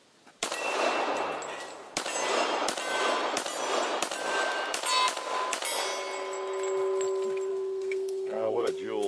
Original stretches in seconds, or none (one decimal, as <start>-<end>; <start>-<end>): 0.0-7.5; 8.7-9.1